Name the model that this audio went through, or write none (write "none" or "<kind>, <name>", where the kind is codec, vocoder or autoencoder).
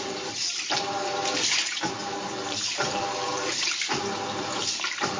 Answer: vocoder, BigVGAN v2